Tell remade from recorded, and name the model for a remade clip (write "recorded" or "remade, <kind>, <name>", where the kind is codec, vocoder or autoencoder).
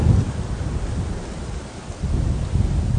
recorded